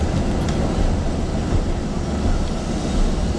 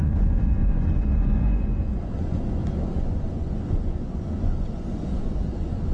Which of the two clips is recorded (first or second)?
first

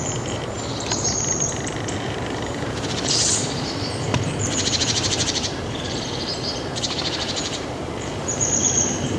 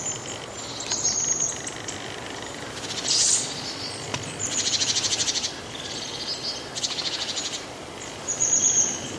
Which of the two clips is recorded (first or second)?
second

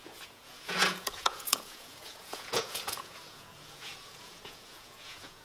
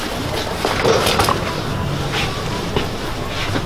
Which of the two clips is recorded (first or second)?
second